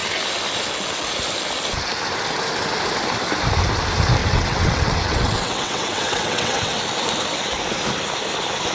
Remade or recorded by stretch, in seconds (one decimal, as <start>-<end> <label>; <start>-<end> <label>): 0.0-4.2 recorded; 4.2-6.8 remade; 6.8-8.7 recorded